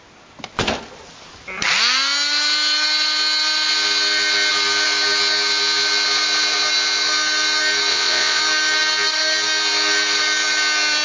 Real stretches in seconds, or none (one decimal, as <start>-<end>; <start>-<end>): 0.0-7.9; 8.4-11.0

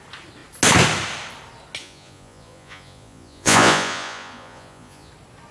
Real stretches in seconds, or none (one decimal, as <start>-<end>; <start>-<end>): 0.0-1.8; 5.1-5.5

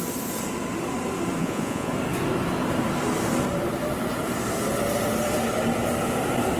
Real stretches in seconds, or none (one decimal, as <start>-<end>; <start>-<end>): 0.0-1.4; 1.9-6.6

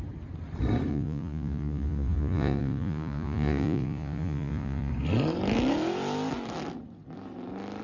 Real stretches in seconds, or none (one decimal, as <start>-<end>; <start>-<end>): 0.0-0.9; 4.9-7.8